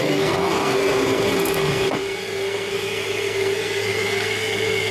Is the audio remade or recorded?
remade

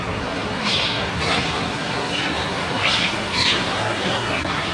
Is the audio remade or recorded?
remade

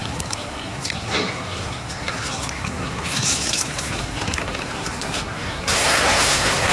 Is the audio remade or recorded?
remade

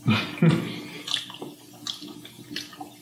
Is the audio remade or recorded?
recorded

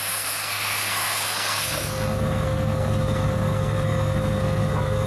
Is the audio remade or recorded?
remade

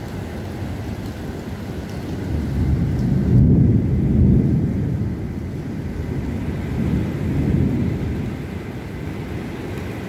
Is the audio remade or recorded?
recorded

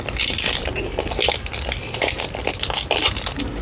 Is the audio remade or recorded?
recorded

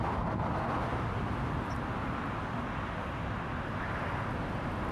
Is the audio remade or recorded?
recorded